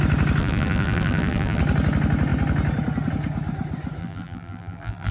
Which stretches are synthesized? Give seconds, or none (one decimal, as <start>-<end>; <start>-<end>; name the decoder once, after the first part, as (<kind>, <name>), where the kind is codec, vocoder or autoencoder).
0.4-1.6 (vocoder, BigVGAN v2); 4.0-5.1